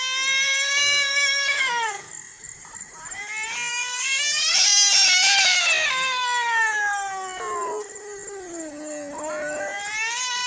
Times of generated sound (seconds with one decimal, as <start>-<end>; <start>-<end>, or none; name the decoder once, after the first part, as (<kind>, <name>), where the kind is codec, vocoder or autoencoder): 0.8-2.1 (codec, DAC); 3.7-4.2